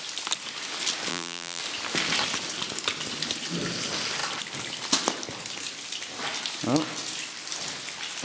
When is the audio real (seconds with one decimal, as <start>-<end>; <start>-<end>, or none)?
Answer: 0.0-1.1; 1.6-8.2